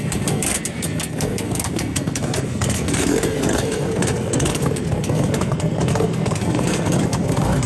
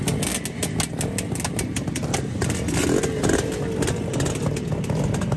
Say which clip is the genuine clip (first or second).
second